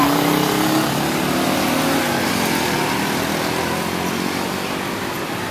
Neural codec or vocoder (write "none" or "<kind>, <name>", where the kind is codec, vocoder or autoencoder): none